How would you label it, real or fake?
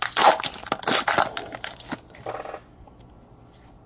real